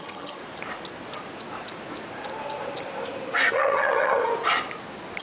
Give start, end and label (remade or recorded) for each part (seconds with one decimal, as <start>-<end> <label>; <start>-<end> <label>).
0.0-0.4 remade; 0.4-3.5 recorded; 3.5-4.3 remade; 4.3-5.2 recorded